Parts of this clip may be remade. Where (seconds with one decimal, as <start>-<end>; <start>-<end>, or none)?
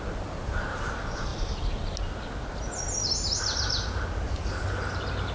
none